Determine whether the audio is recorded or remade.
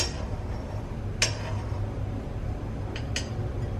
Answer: recorded